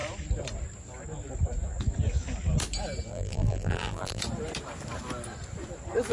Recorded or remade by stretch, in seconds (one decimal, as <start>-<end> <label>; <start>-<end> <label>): 0.0-3.1 recorded; 3.1-4.2 remade; 4.2-6.1 recorded